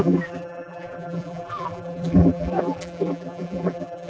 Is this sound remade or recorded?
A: remade